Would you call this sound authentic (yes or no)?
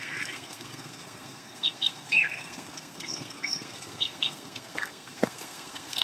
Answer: no